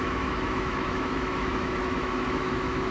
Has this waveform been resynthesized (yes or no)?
yes